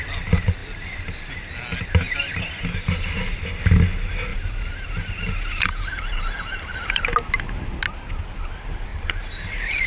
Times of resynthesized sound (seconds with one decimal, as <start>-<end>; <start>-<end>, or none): 4.3-7.0; 8.9-9.9